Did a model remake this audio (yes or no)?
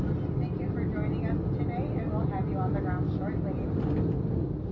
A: no